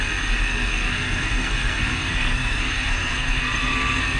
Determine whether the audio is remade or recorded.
remade